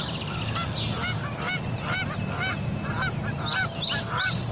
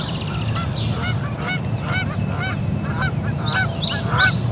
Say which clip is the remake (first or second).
second